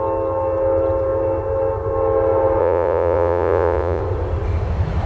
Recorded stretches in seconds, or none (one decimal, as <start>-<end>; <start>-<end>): 0.0-2.6; 4.0-5.1